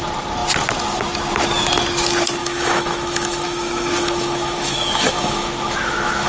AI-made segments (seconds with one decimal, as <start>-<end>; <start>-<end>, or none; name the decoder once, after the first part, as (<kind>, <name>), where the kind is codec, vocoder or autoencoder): 2.4-6.3 (autoencoder, DAC-VAE)